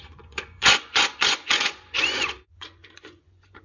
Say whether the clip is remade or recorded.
remade